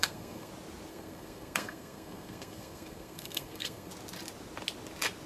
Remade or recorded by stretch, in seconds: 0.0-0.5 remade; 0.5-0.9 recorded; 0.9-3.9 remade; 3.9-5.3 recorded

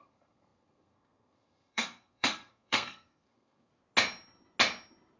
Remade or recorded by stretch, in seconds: 0.0-3.7 remade; 3.7-5.2 recorded

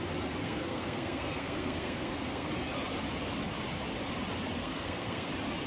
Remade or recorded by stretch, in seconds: 0.0-0.4 recorded; 0.4-2.5 remade; 2.5-4.6 recorded; 4.6-5.3 remade; 5.3-5.7 recorded

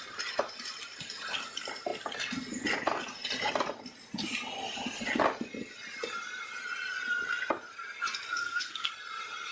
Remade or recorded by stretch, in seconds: 0.0-8.4 recorded; 8.4-8.9 remade; 8.9-9.5 recorded

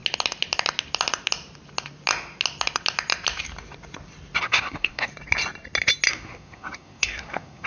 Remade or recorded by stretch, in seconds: 0.0-4.4 recorded; 4.4-5.1 remade; 5.1-6.1 recorded; 6.1-7.7 remade